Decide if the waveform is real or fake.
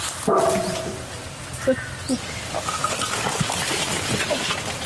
real